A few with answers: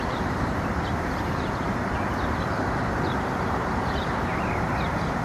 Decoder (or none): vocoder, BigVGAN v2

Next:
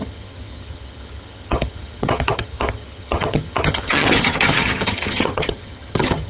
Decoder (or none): vocoder, HiFi-GAN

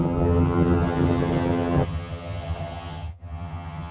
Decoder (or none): vocoder, HiFi-GAN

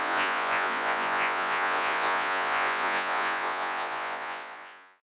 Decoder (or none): vocoder, Vocos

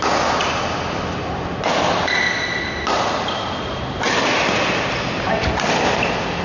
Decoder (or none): none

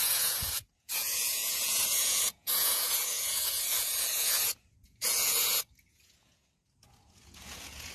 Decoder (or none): vocoder, Vocos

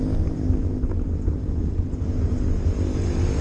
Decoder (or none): none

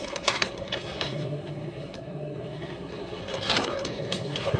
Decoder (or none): codec, SNAC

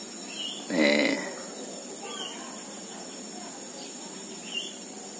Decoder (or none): none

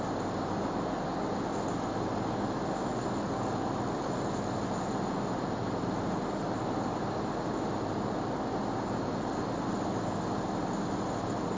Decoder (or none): none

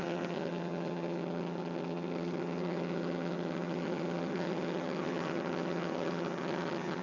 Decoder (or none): vocoder, HiFi-GAN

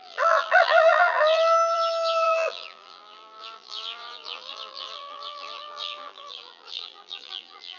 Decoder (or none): vocoder, BigVGAN v2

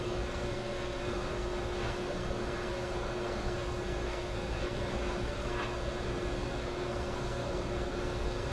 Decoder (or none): codec, SNAC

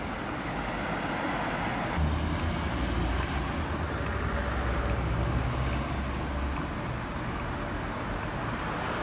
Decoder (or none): none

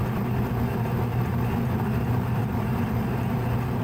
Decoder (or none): vocoder, BigVGAN v2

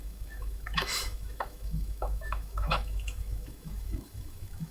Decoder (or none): autoencoder, DAC-VAE